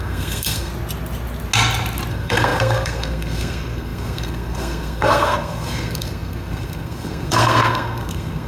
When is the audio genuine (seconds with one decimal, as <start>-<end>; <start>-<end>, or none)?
0.7-2.1